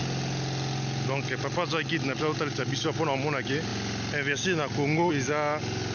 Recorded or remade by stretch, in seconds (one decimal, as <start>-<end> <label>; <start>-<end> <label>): 0.0-5.9 recorded